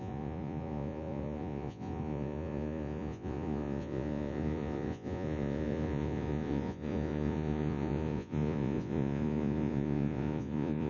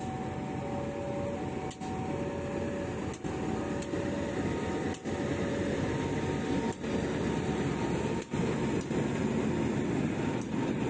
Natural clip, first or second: second